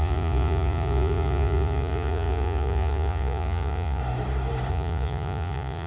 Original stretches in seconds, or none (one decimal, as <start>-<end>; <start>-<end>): 4.0-4.7